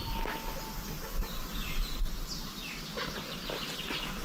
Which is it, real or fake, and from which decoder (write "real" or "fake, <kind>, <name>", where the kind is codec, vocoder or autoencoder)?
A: real